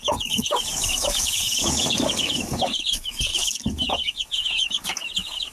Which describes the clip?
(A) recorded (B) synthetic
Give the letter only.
B